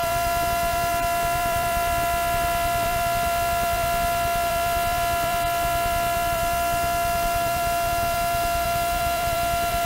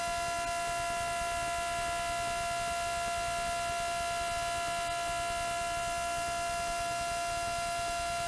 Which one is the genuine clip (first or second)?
second